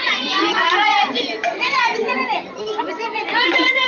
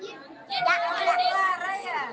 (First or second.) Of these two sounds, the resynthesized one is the first